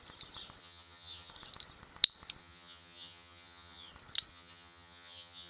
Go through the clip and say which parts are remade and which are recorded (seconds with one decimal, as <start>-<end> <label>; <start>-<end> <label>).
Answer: 0.0-0.6 recorded; 0.6-1.3 remade; 1.3-2.4 recorded; 2.4-3.9 remade; 3.9-4.3 recorded; 4.3-5.5 remade